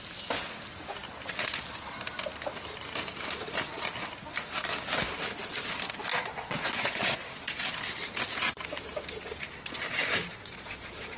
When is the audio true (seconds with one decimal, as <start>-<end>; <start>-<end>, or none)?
0.0-6.1; 7.7-10.2